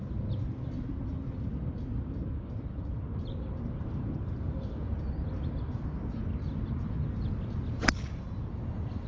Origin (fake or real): real